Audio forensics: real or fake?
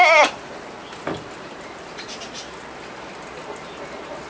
real